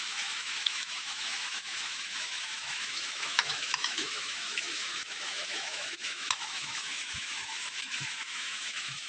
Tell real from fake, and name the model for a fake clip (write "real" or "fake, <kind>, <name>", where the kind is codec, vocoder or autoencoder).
fake, autoencoder, DAC-VAE